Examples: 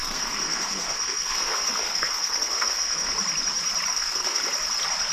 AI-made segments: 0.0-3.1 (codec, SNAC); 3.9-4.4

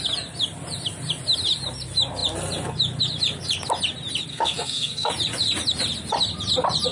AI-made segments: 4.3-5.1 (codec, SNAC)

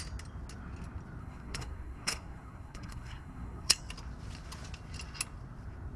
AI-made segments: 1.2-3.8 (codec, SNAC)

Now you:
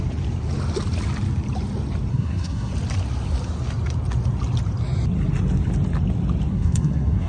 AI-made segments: 2.1-2.7 (codec, SNAC); 6.5-7.3

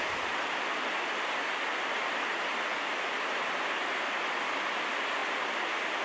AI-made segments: none

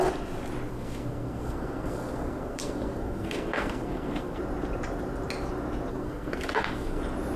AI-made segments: 0.7-4.4 (codec, SNAC); 5.9-7.0